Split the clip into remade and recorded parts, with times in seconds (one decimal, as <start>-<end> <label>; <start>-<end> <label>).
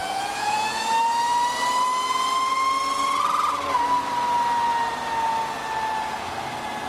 0.0-0.8 remade; 0.8-6.9 recorded